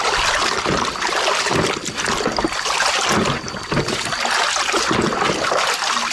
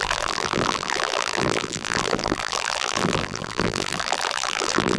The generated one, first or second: second